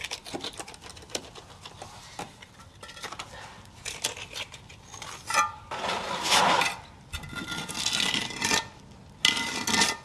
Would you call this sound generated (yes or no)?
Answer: no